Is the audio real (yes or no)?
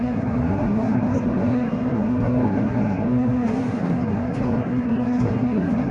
no